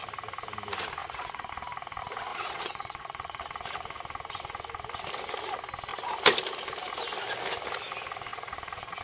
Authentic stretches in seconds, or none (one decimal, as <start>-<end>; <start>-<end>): 0.0-1.0; 1.5-2.3; 3.4-8.3